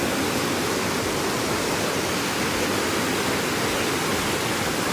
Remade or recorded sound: recorded